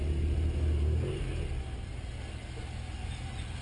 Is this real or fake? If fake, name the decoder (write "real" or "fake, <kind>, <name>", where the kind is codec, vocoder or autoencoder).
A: real